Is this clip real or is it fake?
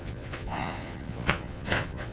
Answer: fake